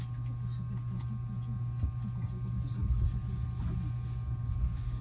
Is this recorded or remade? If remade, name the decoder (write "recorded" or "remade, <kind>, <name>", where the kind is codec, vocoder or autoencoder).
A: recorded